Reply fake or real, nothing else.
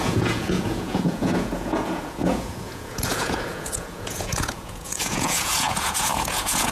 fake